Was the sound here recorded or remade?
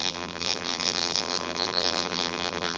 remade